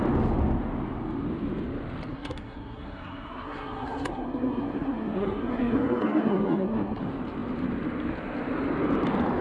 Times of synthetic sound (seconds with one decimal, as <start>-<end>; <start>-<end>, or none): 2.1-7.0